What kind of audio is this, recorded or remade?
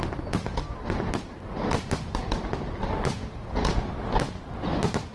recorded